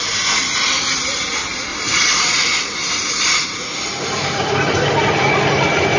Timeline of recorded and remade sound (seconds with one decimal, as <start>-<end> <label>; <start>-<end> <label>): 0.0-1.7 recorded; 1.7-5.3 remade; 5.3-6.0 recorded